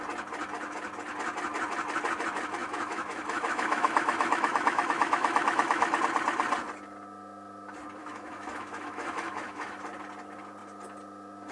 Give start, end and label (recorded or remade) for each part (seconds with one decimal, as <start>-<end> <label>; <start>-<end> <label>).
0.0-2.6 recorded; 2.6-6.0 remade; 6.0-8.0 recorded; 8.0-9.8 remade; 9.8-11.5 recorded